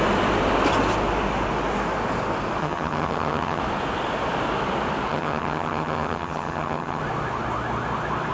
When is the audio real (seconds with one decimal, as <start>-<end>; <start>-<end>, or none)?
0.0-2.6; 3.6-5.1; 7.0-8.3

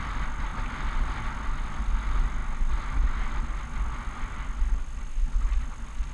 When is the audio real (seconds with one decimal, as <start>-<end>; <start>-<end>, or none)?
0.0-6.1

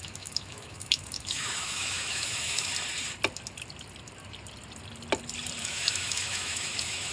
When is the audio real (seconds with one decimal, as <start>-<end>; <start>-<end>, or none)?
2.7-5.6

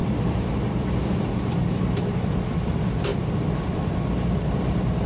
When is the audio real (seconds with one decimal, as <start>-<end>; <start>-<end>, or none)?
1.6-3.1

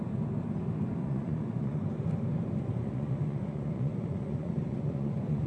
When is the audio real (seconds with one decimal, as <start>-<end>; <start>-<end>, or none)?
0.0-1.0; 1.9-2.7

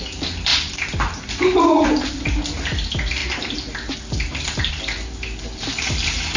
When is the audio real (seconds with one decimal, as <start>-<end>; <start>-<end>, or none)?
0.0-6.4

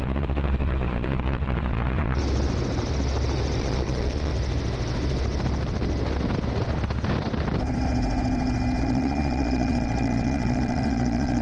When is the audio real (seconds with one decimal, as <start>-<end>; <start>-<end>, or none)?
2.2-3.6; 4.3-8.8